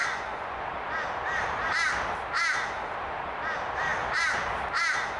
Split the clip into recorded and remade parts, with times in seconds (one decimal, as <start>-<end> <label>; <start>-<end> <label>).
0.0-0.6 remade; 0.6-5.2 recorded